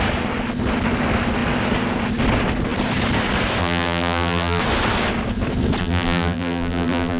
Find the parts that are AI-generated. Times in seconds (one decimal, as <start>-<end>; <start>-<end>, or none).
3.6-4.6; 5.8-7.2